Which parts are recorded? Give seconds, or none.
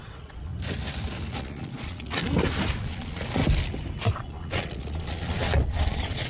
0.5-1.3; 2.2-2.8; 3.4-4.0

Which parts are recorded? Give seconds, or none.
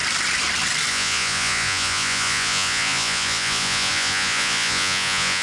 0.0-0.9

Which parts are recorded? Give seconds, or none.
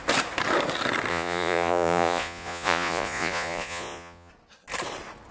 0.0-1.1; 4.3-5.3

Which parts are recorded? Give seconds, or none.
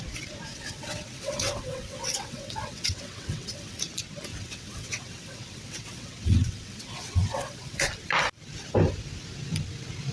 0.0-0.5; 3.8-4.3; 7.9-10.1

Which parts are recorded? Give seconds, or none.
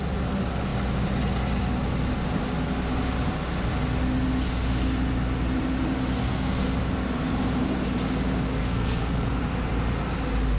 0.0-6.2; 6.8-8.6; 9.4-10.6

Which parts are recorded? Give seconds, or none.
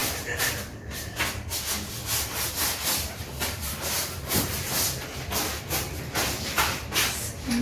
0.0-7.6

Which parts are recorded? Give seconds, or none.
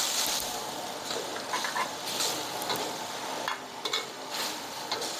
0.0-5.2